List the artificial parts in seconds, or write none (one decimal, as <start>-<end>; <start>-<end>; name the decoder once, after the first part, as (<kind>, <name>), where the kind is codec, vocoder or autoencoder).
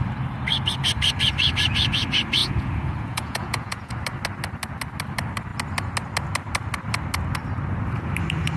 2.4-3.9 (vocoder, Vocos)